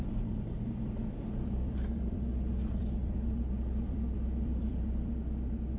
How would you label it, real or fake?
fake